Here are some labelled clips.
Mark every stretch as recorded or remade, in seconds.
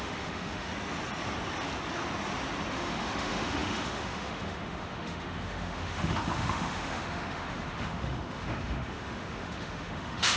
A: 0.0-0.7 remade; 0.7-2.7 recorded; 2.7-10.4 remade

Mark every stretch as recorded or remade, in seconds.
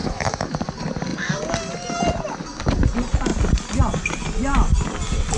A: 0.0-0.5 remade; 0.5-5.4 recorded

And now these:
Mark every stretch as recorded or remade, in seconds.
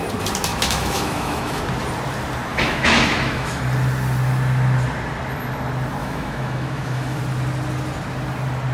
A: 0.0-0.5 recorded; 0.5-1.6 remade; 1.6-2.5 recorded; 2.5-3.6 remade; 3.6-6.0 recorded; 6.0-7.2 remade; 7.2-8.7 recorded